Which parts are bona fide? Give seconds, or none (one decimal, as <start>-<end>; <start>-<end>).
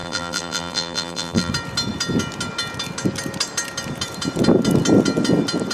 1.5-5.7